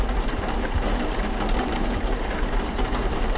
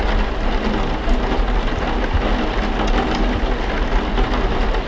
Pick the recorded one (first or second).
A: second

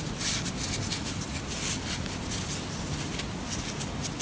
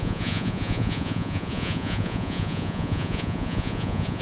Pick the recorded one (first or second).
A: first